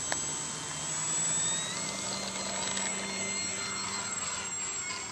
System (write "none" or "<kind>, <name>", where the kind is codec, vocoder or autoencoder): none